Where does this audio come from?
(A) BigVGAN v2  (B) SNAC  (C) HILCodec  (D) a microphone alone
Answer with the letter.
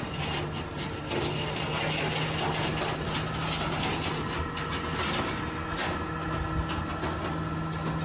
D